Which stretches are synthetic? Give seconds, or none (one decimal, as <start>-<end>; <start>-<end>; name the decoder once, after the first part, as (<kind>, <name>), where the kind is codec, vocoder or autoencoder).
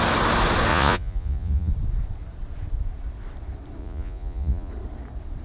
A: 0.7-1.7 (vocoder, Vocos); 3.8-4.7